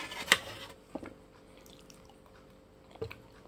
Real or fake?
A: real